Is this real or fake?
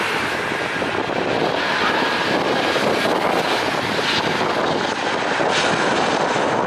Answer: real